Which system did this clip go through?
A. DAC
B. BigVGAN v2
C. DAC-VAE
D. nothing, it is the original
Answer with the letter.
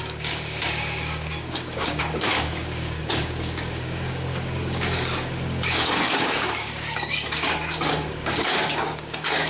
A